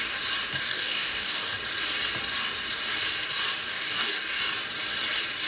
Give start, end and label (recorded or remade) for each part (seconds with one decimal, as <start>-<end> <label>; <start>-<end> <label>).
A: 0.0-0.5 recorded; 0.5-1.6 remade; 1.6-3.7 recorded; 3.7-4.5 remade; 4.5-5.5 recorded

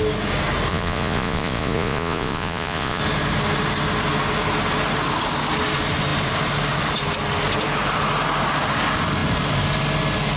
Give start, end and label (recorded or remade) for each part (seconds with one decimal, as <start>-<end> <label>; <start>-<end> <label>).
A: 0.0-0.7 recorded; 0.7-3.0 remade; 3.0-10.4 recorded